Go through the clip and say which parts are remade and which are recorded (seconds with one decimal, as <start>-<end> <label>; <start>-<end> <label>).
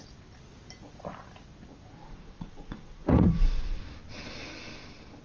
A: 0.0-2.0 recorded; 2.0-3.8 remade; 3.8-5.2 recorded